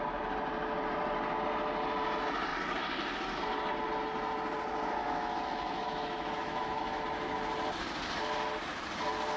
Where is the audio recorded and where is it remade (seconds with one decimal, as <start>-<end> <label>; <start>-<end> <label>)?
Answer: 0.0-5.0 recorded; 5.0-7.0 remade; 7.0-9.4 recorded